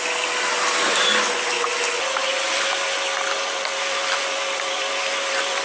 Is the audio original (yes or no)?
yes